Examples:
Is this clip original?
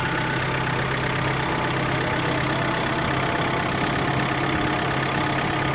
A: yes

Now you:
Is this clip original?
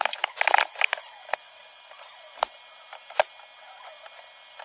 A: yes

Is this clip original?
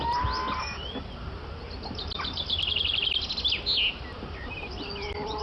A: yes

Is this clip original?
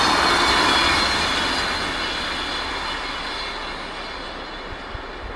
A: yes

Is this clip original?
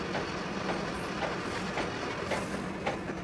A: yes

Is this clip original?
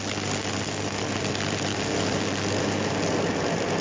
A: yes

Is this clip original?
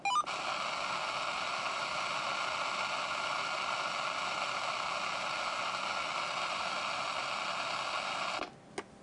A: yes